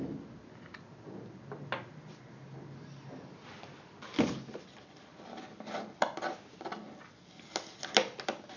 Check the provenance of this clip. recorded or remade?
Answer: recorded